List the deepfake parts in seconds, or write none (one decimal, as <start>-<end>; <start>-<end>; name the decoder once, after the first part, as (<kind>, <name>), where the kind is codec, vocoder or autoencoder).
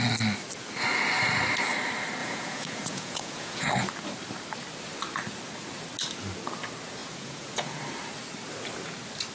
2.2-3.7 (vocoder, Vocos); 7.0-7.8